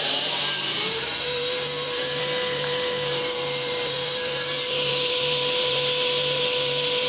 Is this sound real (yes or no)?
no